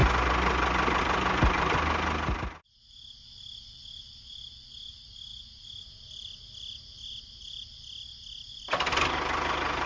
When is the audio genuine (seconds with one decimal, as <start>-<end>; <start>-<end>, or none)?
0.0-9.9